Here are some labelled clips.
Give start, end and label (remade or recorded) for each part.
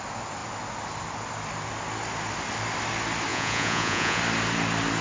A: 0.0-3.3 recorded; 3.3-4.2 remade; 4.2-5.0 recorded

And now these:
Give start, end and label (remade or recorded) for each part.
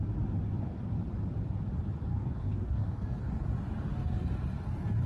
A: 0.0-2.1 recorded; 2.1-3.3 remade; 3.3-5.1 recorded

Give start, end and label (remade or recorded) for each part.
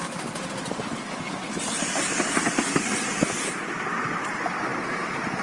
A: 0.0-5.4 recorded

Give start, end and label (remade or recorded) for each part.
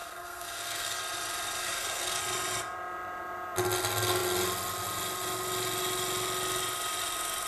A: 0.0-1.0 remade; 1.0-1.6 recorded; 1.6-2.2 remade; 2.2-7.5 recorded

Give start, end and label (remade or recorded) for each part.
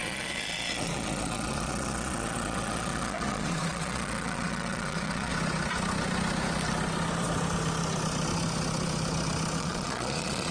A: 0.0-5.3 remade; 5.3-9.6 recorded; 9.6-10.5 remade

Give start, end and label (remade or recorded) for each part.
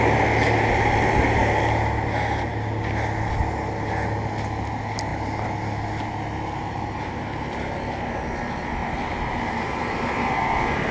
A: 0.0-8.8 recorded; 8.8-10.9 remade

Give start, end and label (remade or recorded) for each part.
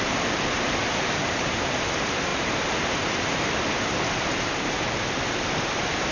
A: 0.0-6.1 remade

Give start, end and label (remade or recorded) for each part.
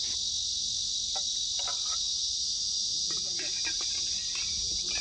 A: 0.0-5.0 recorded